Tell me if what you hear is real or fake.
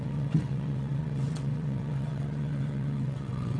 fake